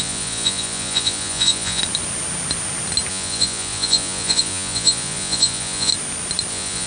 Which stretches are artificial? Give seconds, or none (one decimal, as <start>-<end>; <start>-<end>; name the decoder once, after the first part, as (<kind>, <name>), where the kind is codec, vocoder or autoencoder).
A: 0.0-1.8 (vocoder, Vocos); 3.1-5.9; 6.5-6.9